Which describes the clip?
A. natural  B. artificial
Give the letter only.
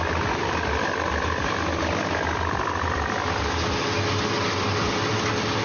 A